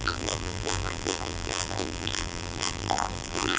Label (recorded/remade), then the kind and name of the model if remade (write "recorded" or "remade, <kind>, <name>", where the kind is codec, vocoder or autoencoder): remade, vocoder, BigVGAN v2